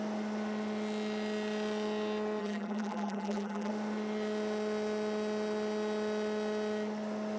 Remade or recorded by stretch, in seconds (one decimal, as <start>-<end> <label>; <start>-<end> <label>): 0.0-2.4 recorded; 2.4-3.7 remade; 3.7-7.4 recorded